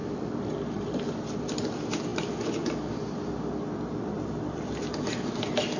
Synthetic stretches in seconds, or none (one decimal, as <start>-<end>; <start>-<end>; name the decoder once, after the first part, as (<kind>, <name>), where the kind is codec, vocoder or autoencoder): none